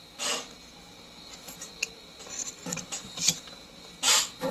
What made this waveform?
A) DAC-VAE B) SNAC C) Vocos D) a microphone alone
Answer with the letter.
D